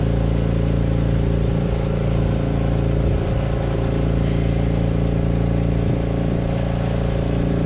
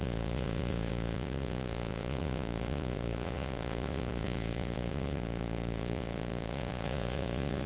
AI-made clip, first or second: second